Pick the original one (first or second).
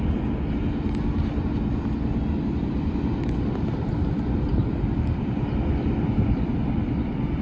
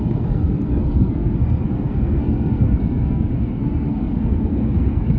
first